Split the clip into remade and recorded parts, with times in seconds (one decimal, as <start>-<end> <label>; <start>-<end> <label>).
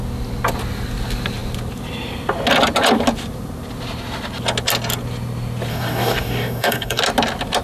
0.0-5.7 recorded; 5.7-7.0 remade; 7.0-7.6 recorded